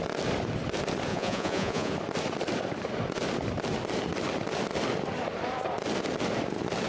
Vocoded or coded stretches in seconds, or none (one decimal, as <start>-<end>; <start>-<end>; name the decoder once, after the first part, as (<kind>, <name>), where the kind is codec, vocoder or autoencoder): 1.1-1.9 (vocoder, Vocos)